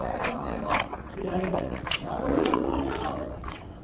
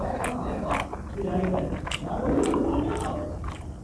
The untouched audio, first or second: second